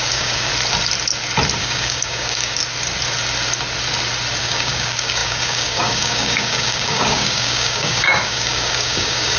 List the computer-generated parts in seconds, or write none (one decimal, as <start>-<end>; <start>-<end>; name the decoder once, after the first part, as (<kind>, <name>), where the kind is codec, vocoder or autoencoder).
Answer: 0.0-0.5 (codec, DAC); 1.6-2.6; 4.4-9.4